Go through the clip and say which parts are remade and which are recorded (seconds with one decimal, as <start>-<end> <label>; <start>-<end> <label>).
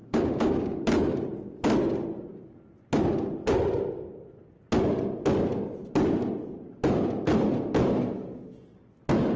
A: 0.0-0.9 remade; 0.9-9.4 recorded